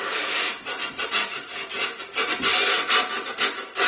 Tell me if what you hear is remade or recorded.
recorded